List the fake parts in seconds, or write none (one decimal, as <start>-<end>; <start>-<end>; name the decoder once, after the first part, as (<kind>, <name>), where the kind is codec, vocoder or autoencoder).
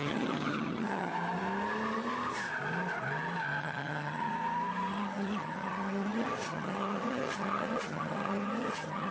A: 0.0-1.1 (vocoder, HiFi-GAN); 3.6-4.3; 4.9-9.1